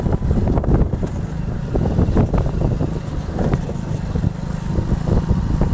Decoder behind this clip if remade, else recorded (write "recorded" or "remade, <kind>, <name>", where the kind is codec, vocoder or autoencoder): recorded